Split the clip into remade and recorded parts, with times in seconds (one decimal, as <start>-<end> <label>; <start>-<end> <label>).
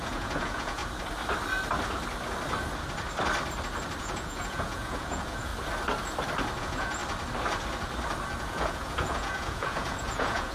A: 0.0-0.8 remade; 0.8-4.0 recorded; 4.0-5.5 remade; 5.5-6.6 recorded; 6.6-7.0 remade; 7.0-8.4 recorded; 8.4-10.5 remade